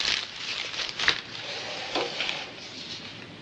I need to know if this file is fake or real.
fake